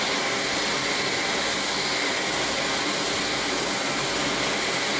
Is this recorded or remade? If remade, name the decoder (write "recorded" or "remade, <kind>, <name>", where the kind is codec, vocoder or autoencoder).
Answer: recorded